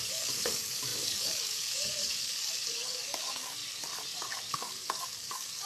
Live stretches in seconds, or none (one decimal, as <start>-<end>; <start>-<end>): 3.6-4.5